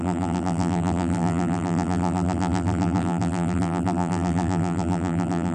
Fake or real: fake